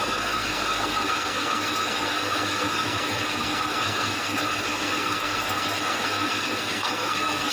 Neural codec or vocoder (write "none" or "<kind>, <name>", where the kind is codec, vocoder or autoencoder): codec, SNAC